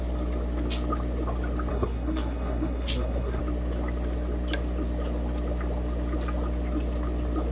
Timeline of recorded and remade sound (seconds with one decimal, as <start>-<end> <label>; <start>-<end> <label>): 0.0-1.7 recorded; 1.7-3.4 remade; 3.4-7.5 recorded